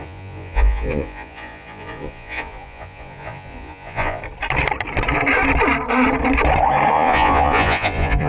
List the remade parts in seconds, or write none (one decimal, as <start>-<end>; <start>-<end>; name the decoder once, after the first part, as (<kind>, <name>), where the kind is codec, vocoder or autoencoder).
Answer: 0.0-4.2 (vocoder, Vocos); 6.9-8.3